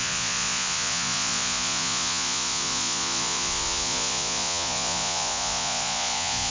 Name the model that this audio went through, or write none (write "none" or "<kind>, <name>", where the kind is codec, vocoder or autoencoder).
vocoder, Vocos